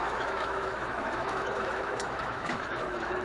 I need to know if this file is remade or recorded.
remade